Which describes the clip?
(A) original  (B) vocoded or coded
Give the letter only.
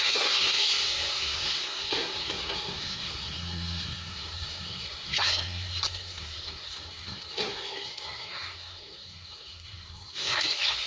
B